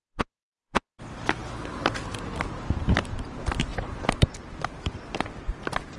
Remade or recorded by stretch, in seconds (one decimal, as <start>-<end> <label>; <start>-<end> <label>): 0.0-1.0 remade; 1.0-6.0 recorded

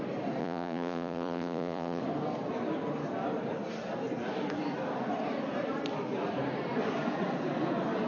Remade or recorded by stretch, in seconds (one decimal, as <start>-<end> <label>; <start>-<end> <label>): 0.0-0.4 recorded; 0.4-2.0 remade; 2.0-8.1 recorded

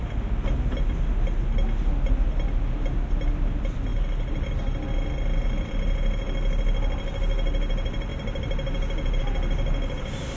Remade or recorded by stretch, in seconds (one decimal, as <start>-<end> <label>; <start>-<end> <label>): 0.0-10.4 recorded

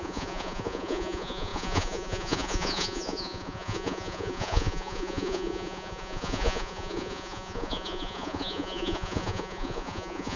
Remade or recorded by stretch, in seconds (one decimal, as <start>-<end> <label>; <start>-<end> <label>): 0.0-10.4 remade

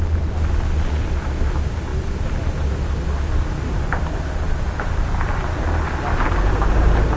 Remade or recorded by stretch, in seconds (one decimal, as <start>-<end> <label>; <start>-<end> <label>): 0.0-7.2 recorded

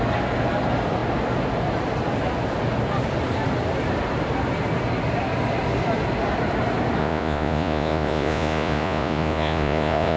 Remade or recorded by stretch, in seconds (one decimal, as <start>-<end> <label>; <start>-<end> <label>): 0.0-7.0 recorded; 7.0-10.2 remade

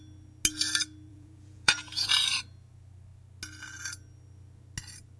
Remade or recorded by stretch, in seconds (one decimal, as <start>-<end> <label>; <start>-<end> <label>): 0.0-1.1 recorded; 1.1-2.1 remade; 2.1-5.2 recorded

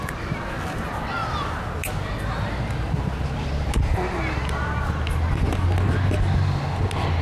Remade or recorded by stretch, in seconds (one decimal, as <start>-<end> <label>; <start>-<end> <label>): 0.0-7.2 recorded